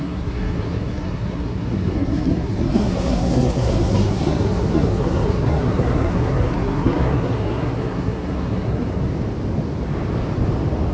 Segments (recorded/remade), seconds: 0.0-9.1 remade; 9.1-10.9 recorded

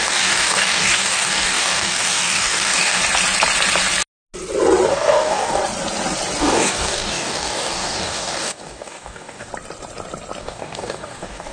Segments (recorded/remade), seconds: 0.0-3.0 remade; 3.0-4.9 recorded; 4.9-5.6 remade; 5.6-6.4 recorded; 6.4-9.5 remade; 9.5-10.4 recorded; 10.4-11.5 remade

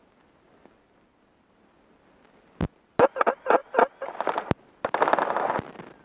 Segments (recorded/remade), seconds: 0.0-6.0 recorded

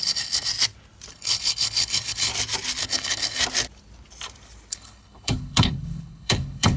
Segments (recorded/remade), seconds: 0.0-0.5 remade; 0.5-1.1 recorded; 1.1-2.3 remade; 2.3-2.8 recorded; 2.8-3.4 remade; 3.4-4.7 recorded; 4.7-6.8 remade

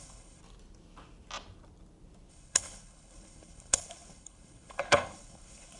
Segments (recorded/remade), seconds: 0.0-0.4 remade; 0.4-2.3 recorded; 2.3-5.8 remade

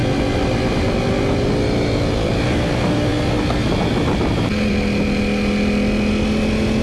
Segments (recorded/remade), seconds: 0.0-6.8 recorded

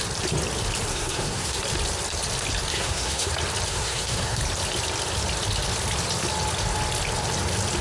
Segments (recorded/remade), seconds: 0.0-0.9 recorded; 0.9-1.6 remade; 1.6-2.7 recorded; 2.7-3.3 remade; 3.3-3.7 recorded; 3.7-4.4 remade; 4.4-7.8 recorded

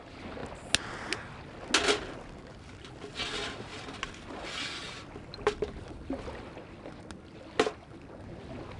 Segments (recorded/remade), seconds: 0.0-8.8 recorded